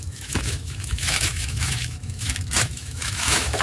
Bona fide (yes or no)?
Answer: no